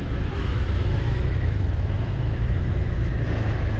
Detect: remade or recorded remade